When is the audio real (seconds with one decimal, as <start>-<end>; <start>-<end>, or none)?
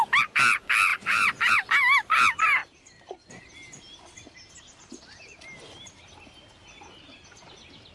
0.0-0.9; 1.5-7.9